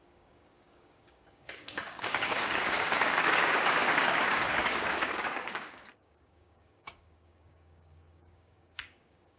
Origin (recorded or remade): remade